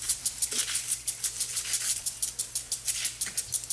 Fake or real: real